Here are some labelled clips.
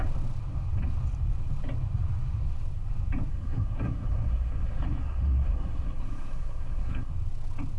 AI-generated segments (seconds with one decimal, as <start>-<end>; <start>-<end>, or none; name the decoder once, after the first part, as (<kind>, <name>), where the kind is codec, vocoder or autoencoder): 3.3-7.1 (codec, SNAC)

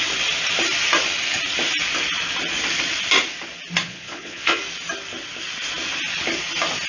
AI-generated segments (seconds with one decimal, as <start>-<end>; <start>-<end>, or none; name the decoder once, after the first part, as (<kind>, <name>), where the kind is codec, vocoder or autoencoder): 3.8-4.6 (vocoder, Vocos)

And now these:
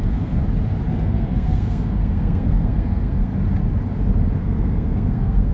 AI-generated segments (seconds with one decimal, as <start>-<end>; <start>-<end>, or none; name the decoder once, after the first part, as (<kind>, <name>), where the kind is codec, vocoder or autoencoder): 0.0-0.4 (codec, SNAC); 0.9-3.3; 4.4-5.5